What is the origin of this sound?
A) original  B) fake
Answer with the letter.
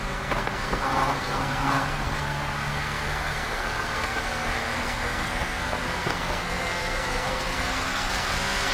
B